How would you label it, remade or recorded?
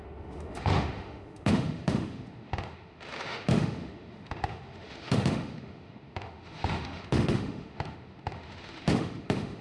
remade